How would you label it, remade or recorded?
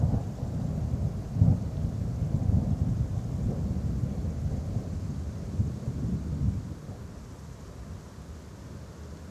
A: recorded